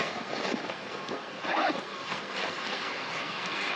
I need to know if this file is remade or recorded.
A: remade